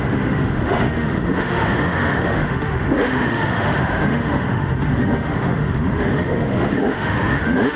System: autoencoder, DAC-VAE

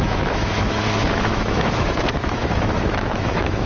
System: autoencoder, DAC-VAE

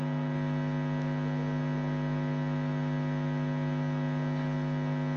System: none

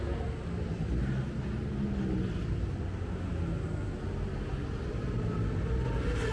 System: none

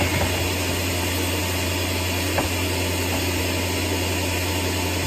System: none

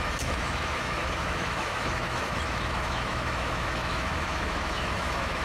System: autoencoder, DAC-VAE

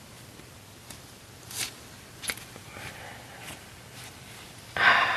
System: none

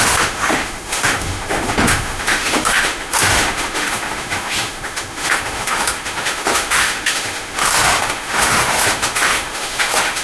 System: autoencoder, DAC-VAE